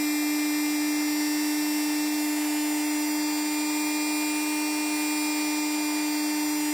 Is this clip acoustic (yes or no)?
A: yes